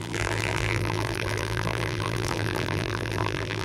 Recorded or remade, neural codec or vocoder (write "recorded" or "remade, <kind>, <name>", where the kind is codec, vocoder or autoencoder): remade, vocoder, BigVGAN v2